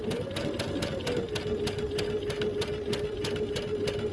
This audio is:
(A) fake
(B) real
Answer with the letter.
B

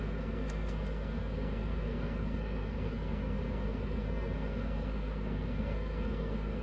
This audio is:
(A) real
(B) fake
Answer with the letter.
B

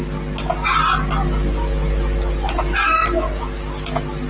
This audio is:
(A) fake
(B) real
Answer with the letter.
B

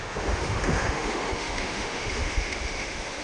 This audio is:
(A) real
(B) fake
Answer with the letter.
B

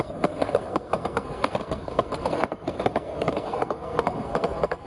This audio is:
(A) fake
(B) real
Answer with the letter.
A